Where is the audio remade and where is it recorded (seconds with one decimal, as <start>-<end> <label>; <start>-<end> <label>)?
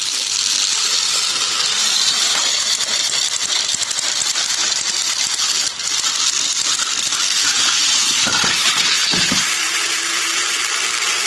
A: 0.0-1.8 recorded; 1.8-3.1 remade; 3.1-4.3 recorded; 4.3-4.9 remade; 4.9-7.4 recorded; 7.4-10.6 remade; 10.6-11.3 recorded